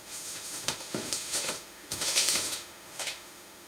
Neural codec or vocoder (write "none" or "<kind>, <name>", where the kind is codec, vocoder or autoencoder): autoencoder, DAC-VAE